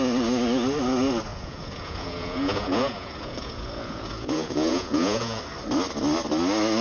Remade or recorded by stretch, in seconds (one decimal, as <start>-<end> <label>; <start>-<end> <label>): 0.0-1.3 recorded; 1.3-5.4 remade; 5.4-6.8 recorded